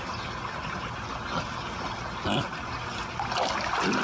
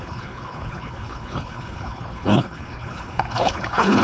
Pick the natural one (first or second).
first